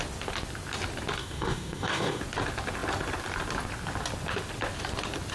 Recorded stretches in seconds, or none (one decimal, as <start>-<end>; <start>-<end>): 0.0-1.2; 2.2-5.3